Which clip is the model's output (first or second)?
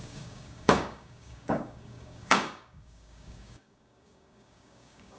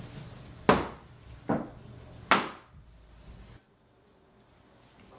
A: first